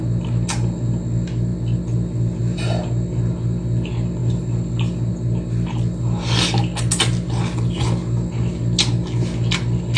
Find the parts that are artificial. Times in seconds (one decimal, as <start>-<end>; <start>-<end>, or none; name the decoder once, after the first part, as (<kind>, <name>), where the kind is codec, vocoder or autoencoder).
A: none